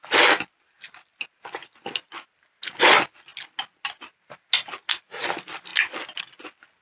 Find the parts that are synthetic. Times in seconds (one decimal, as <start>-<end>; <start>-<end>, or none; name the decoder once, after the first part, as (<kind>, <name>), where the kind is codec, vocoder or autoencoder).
none